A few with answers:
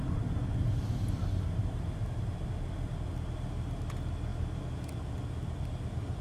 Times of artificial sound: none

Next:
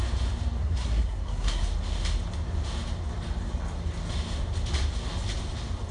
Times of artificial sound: 0.6-1.6

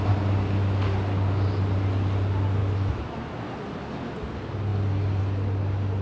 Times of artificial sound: 2.6-3.4

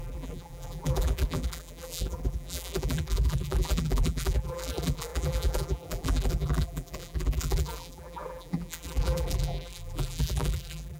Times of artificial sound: 0.0-11.0